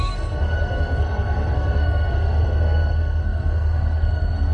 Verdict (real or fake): fake